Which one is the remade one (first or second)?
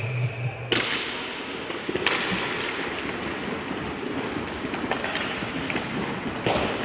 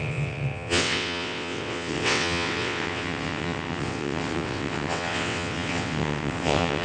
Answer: second